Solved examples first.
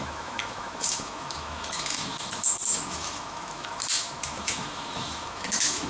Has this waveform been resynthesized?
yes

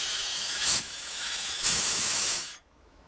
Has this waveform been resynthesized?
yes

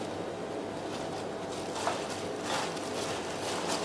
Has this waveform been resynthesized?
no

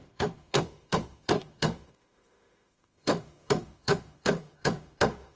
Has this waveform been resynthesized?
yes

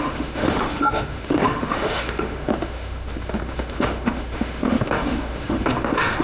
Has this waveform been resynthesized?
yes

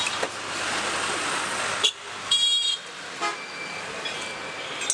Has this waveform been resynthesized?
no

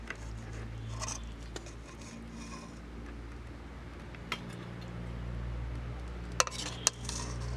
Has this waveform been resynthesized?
no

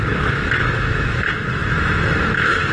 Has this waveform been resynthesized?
yes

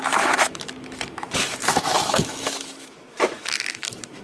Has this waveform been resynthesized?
yes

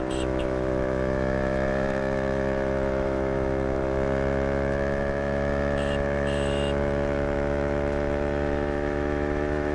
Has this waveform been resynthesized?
yes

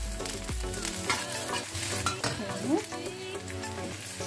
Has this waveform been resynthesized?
no